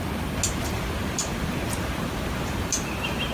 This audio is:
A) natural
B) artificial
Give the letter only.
A